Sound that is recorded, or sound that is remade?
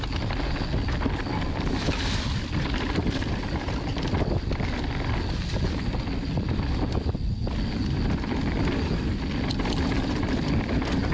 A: recorded